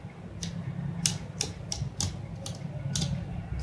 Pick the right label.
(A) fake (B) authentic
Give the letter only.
B